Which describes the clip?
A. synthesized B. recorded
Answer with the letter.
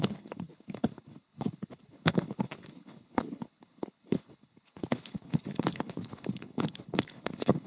A